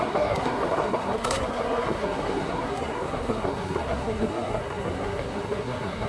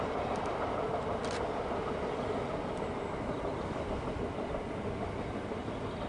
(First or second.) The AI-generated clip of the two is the first